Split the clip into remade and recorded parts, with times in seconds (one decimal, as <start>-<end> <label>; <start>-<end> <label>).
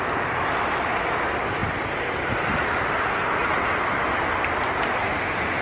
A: 0.0-5.6 recorded